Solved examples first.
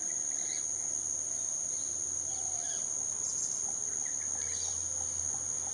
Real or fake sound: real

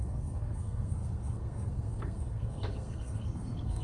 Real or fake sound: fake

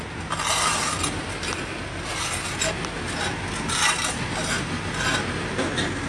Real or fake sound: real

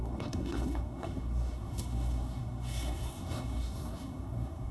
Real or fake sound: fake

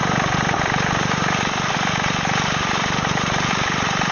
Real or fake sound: real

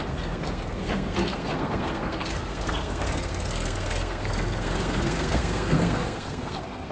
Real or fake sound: fake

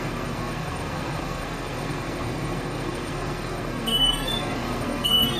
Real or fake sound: fake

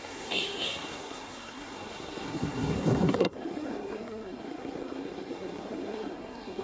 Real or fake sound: fake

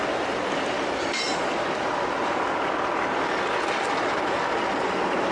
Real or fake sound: real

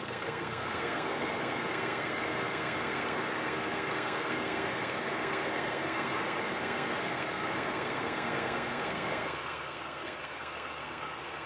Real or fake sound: fake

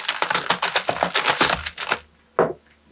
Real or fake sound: real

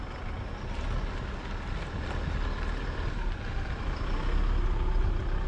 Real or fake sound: real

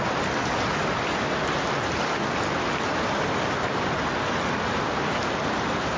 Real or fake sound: real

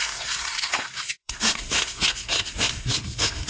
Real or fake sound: fake